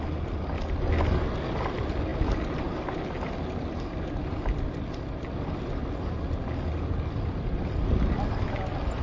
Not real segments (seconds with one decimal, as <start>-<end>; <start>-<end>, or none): none